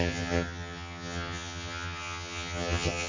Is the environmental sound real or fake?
fake